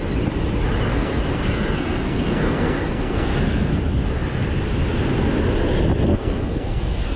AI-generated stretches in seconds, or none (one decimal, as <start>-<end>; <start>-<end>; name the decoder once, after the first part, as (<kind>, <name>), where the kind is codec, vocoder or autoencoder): 0.9-3.8 (codec, SNAC); 6.1-7.2